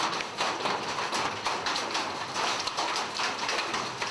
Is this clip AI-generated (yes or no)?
no